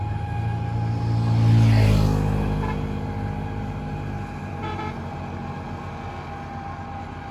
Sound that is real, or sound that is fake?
real